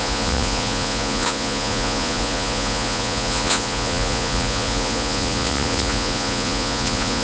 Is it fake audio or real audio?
fake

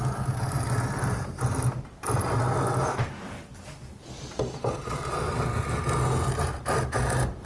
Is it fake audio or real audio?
real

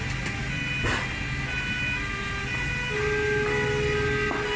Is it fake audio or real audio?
real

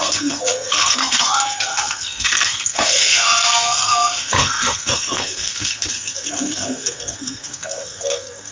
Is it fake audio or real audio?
fake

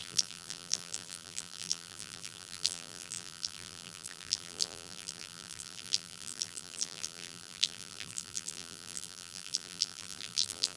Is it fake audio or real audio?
fake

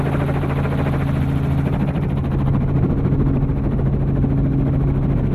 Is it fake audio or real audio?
real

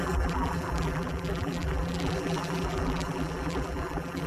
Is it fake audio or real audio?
fake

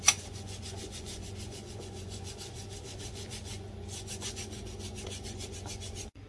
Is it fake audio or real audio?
fake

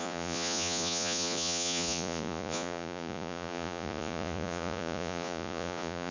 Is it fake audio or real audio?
fake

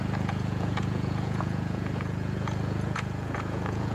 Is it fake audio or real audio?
fake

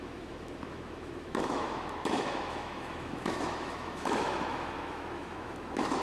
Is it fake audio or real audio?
fake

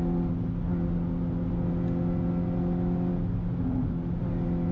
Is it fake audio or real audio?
real